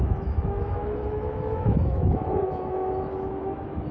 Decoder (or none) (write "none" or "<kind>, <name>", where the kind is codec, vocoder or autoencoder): autoencoder, DAC-VAE